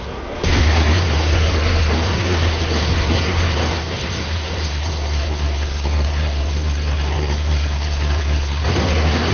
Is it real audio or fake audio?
fake